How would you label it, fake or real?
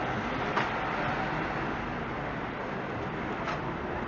real